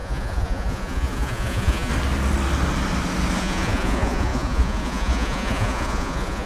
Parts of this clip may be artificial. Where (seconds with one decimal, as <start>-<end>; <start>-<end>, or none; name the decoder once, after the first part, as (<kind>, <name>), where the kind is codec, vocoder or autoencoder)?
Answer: 0.0-1.9 (vocoder, Vocos); 3.4-6.5